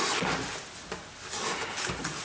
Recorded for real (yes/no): yes